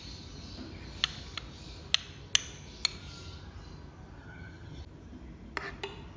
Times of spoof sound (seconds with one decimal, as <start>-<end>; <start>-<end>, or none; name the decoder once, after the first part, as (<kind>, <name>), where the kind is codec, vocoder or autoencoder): 4.2-4.8 (vocoder, HiFi-GAN)